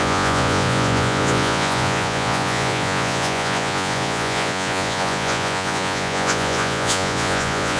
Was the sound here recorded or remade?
remade